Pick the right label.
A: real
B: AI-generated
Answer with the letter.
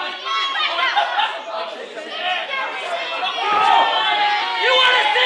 A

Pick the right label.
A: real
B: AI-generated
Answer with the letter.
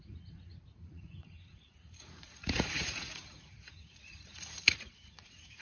B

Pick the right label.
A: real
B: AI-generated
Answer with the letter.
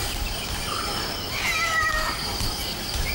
A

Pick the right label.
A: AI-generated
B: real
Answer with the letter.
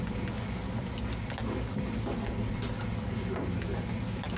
B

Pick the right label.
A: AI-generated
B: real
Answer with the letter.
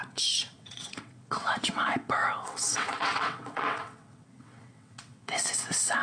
A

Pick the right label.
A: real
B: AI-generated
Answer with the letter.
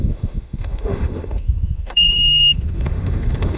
B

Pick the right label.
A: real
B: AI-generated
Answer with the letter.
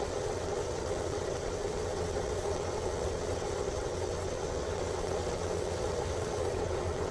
B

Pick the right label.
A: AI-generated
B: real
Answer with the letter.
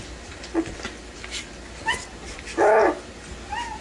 B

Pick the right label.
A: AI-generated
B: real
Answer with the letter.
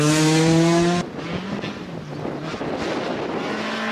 B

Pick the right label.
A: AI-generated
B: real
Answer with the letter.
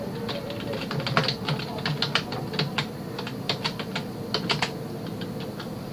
B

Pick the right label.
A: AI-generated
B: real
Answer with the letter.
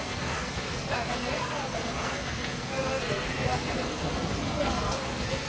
A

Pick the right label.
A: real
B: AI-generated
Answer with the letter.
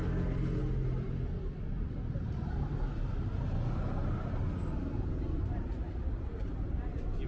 A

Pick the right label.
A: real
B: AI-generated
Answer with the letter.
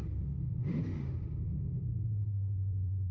B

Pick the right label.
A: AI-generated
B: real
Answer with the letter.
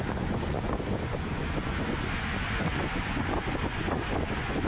A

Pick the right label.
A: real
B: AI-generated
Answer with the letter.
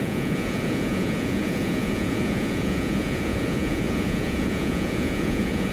B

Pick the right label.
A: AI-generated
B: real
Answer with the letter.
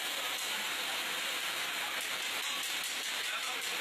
B